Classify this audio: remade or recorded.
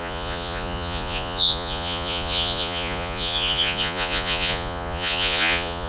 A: remade